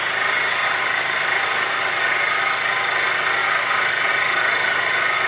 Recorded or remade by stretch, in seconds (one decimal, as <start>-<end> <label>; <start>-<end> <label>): 0.0-0.6 recorded; 0.6-1.5 remade; 1.5-5.3 recorded